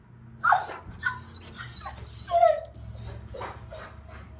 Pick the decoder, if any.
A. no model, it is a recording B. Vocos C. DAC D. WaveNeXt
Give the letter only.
A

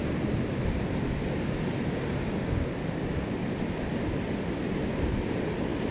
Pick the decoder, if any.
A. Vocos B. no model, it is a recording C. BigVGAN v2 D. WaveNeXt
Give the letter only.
B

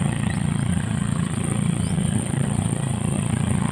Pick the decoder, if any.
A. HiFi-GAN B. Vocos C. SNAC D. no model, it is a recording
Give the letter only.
B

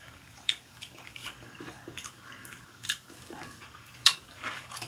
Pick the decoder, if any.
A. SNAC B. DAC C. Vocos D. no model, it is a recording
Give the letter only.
B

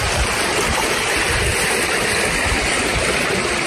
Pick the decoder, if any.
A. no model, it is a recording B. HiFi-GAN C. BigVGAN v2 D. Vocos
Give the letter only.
A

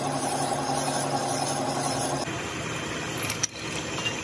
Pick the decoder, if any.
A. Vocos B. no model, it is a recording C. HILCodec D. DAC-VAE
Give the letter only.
B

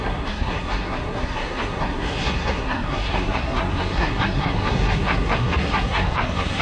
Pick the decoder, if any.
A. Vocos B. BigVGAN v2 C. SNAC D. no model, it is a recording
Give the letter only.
C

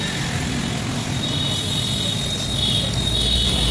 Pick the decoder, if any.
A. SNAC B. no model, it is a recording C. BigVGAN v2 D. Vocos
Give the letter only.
B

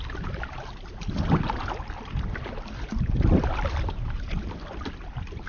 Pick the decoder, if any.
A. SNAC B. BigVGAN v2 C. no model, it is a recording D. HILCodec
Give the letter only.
B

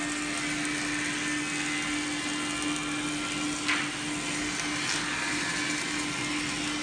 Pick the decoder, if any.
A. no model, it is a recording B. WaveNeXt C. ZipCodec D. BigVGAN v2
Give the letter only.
A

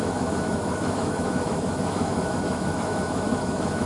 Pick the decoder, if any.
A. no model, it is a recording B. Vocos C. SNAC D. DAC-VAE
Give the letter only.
D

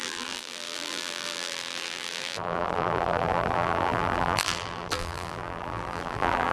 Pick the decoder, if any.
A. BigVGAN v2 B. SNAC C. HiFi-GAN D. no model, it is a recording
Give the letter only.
A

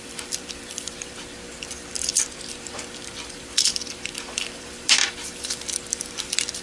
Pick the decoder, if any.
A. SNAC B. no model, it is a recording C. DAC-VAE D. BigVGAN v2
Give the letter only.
D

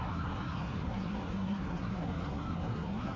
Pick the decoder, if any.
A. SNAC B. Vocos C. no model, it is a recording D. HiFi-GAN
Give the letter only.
A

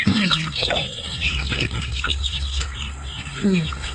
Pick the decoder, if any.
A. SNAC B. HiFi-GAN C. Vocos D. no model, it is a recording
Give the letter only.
A